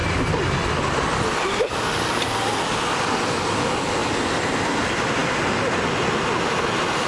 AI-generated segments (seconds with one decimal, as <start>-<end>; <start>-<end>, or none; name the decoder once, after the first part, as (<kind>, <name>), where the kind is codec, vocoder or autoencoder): none